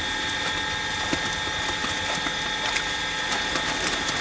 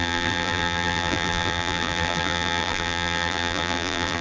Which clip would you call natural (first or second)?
first